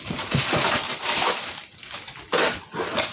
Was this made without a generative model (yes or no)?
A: yes